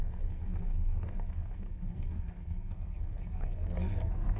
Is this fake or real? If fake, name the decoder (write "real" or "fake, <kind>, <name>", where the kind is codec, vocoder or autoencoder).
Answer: fake, codec, SNAC